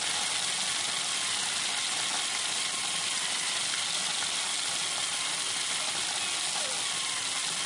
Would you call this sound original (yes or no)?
yes